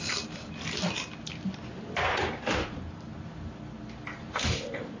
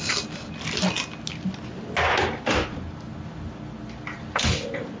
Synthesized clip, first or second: first